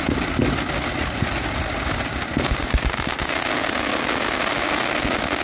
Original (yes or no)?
yes